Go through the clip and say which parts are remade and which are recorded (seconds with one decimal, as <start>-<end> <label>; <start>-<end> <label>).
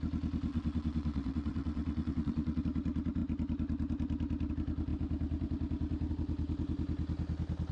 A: 0.0-0.5 recorded; 0.5-2.6 remade; 2.6-7.7 recorded